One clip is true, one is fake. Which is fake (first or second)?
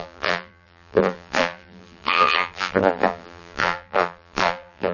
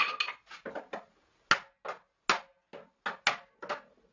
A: first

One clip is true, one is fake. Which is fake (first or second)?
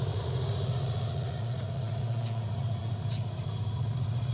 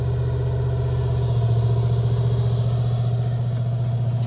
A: first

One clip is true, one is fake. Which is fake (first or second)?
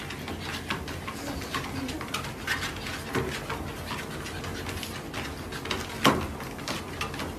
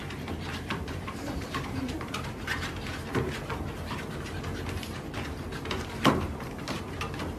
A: second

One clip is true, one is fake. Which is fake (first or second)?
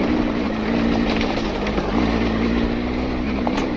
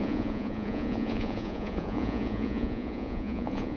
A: second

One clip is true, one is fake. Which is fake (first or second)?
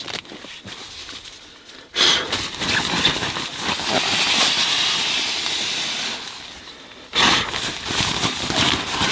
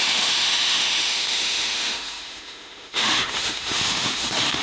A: second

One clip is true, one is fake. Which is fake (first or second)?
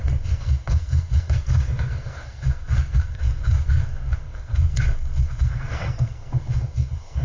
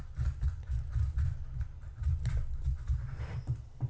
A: first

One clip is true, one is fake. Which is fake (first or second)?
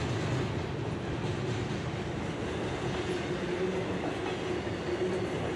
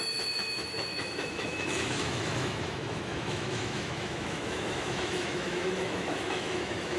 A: second